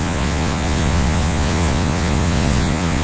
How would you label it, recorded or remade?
remade